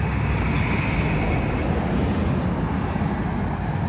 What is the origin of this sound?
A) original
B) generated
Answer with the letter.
A